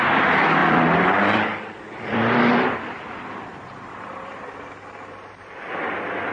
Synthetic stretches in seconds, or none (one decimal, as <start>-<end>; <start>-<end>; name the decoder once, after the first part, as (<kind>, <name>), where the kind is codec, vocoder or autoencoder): 0.6-3.9 (vocoder, BigVGAN v2)